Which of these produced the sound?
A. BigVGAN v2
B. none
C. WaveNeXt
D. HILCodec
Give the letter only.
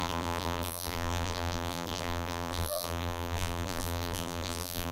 A